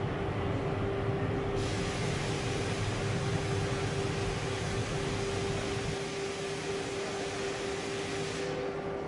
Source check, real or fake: real